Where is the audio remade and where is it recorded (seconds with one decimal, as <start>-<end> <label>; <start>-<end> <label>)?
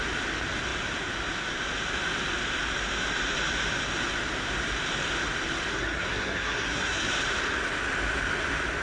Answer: 0.0-5.7 recorded; 5.7-7.1 remade; 7.1-8.8 recorded